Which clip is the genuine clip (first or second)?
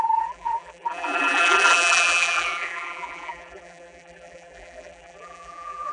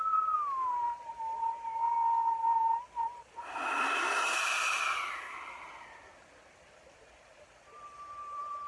second